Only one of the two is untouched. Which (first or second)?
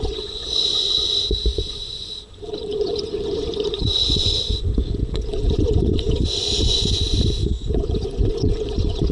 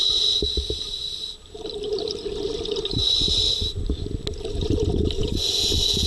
second